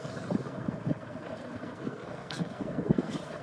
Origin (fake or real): fake